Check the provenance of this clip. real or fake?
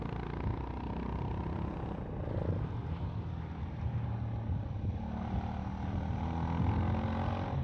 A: real